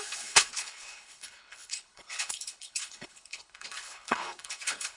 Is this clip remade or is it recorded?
remade